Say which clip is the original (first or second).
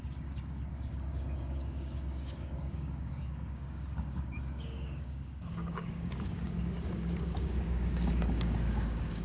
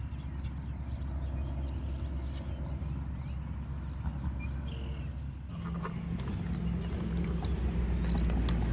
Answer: second